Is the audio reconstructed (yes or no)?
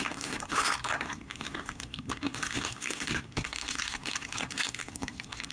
yes